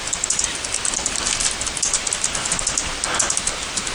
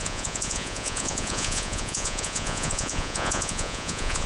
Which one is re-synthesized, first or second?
second